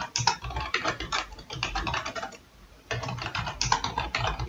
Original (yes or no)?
no